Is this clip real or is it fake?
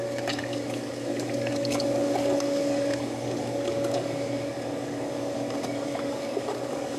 fake